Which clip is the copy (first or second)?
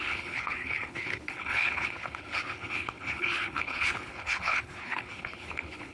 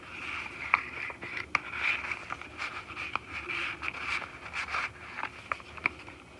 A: first